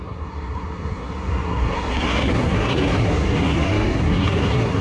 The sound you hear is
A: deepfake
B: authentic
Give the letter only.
A